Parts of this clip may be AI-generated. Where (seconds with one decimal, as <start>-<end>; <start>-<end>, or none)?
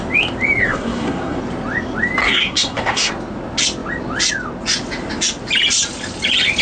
0.6-1.4; 2.2-3.1